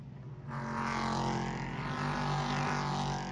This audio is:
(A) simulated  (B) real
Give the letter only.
B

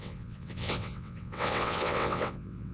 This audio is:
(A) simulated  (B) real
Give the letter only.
A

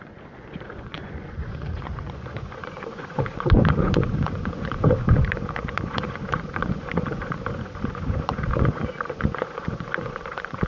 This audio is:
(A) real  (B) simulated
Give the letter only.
B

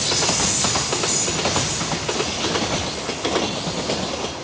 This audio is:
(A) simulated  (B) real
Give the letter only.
B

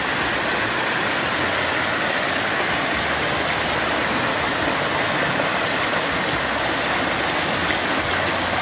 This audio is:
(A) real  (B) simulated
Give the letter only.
A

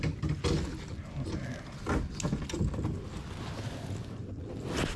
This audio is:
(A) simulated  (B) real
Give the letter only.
B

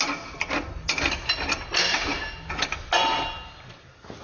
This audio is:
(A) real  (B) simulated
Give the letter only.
A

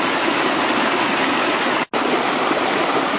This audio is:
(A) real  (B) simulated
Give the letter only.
A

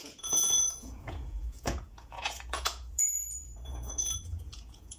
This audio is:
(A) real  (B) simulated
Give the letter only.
B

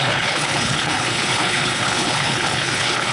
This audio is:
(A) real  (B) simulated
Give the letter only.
B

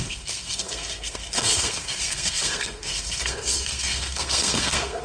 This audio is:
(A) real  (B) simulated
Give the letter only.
B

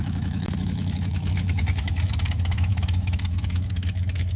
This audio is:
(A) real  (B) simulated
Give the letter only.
B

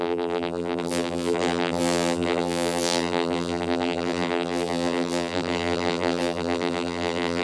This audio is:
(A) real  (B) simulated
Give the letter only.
B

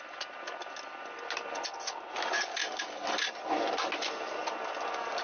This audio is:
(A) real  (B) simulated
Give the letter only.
A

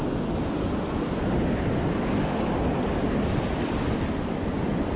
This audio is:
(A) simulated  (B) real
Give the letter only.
B